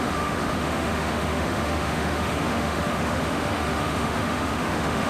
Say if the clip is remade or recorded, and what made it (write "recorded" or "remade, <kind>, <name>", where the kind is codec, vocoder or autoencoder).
remade, autoencoder, DAC-VAE